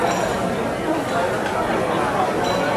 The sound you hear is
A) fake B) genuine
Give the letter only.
B